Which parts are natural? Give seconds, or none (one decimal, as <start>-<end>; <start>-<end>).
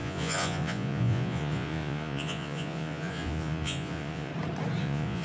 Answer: 4.3-4.8